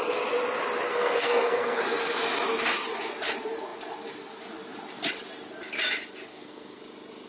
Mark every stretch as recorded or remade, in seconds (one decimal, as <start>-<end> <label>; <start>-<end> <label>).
0.0-0.9 recorded; 0.9-1.8 remade; 1.8-6.3 recorded; 6.3-6.8 remade; 6.8-7.3 recorded